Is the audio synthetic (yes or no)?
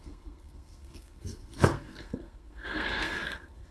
yes